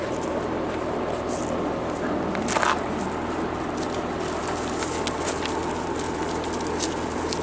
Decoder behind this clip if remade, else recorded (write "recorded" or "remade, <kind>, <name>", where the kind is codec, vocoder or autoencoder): recorded